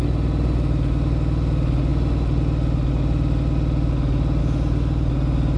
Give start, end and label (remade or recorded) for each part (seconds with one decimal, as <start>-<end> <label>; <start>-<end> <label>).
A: 0.0-5.6 recorded